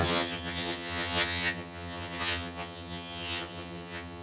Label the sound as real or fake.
fake